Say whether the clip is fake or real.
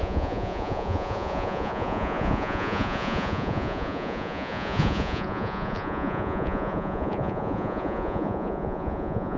fake